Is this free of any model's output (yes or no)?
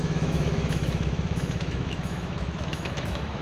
no